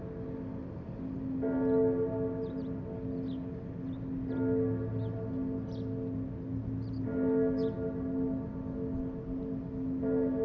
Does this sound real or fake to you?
real